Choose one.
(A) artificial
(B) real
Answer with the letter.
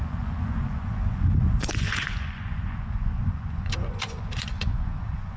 A